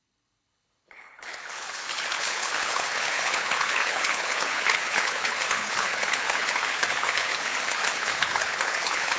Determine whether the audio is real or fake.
fake